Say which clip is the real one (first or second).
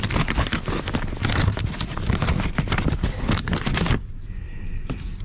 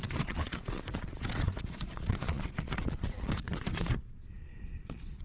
first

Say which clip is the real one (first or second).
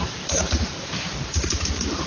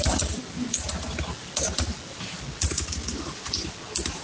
second